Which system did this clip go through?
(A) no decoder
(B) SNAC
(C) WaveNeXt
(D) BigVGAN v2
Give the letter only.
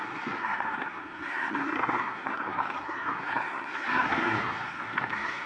B